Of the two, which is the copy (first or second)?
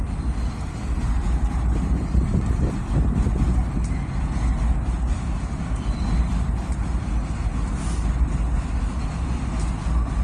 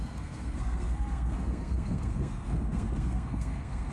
second